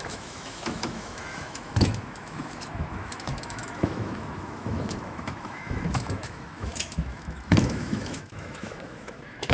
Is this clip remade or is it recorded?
remade